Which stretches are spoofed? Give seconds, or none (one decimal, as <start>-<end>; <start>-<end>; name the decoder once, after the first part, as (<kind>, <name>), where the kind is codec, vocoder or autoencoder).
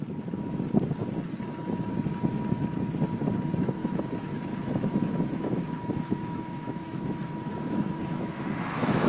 3.8-9.1 (autoencoder, DAC-VAE)